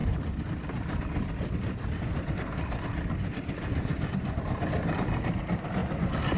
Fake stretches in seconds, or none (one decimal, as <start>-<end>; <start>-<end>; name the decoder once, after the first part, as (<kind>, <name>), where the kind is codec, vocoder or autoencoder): 0.0-2.0 (vocoder, BigVGAN v2)